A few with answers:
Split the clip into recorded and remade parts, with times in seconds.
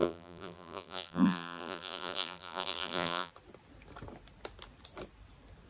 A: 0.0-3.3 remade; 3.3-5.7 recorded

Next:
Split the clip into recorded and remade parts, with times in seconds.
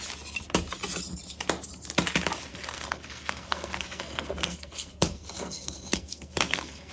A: 0.0-2.5 recorded; 2.5-6.9 remade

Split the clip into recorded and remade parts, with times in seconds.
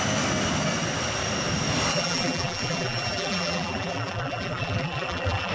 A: 0.0-1.9 recorded; 1.9-5.5 remade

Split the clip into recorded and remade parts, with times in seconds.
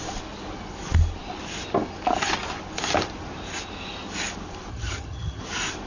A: 0.0-4.7 recorded; 4.7-5.4 remade; 5.4-5.9 recorded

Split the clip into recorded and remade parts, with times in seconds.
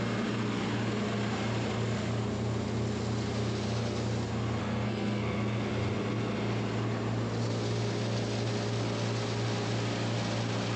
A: 0.0-4.6 recorded; 4.6-5.7 remade; 5.7-10.8 recorded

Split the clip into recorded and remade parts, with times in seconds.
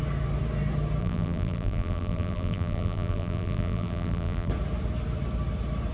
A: 0.0-1.0 recorded; 1.0-4.5 remade; 4.5-5.9 recorded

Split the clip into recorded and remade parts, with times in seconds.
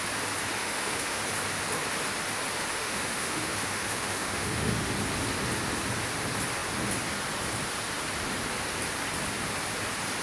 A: 0.0-0.6 recorded; 0.6-1.2 remade; 1.2-2.7 recorded; 2.7-4.9 remade; 4.9-10.2 recorded